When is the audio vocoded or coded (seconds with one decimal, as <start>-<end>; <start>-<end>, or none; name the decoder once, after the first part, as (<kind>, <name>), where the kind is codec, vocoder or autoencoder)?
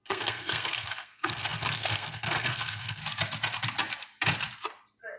0.0-3.0 (codec, SNAC)